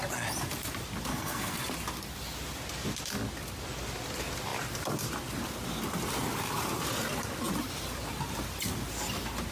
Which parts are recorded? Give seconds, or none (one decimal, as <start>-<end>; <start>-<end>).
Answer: 0.0-1.1; 1.6-9.5

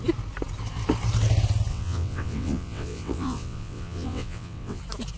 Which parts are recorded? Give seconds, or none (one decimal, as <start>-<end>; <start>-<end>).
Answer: 0.0-1.7; 4.8-5.2

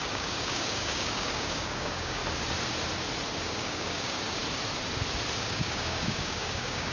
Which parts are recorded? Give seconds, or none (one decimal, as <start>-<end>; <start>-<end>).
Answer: 2.2-3.3; 4.4-5.4

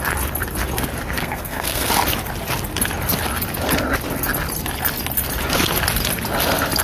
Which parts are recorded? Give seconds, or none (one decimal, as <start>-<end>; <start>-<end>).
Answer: 0.0-1.2; 1.9-6.8

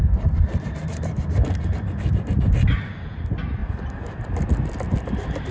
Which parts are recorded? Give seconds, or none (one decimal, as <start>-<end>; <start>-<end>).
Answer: 0.0-5.5

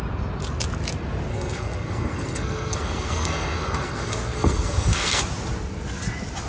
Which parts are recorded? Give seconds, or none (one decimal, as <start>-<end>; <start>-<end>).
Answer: 0.0-1.3; 5.2-6.5

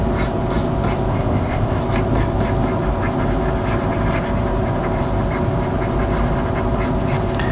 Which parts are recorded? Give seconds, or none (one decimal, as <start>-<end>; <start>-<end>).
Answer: 0.0-1.1; 1.8-7.5

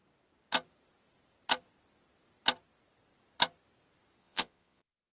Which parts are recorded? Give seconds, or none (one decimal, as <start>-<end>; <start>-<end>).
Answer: 0.0-4.2